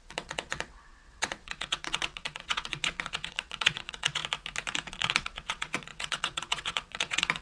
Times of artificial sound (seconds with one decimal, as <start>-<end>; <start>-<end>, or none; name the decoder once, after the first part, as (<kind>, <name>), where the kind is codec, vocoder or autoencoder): 0.0-4.2 (vocoder, WaveNeXt); 4.9-7.4